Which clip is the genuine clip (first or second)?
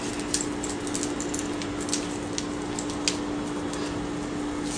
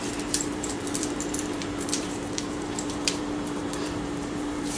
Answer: first